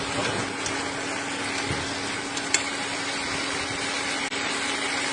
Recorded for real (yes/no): yes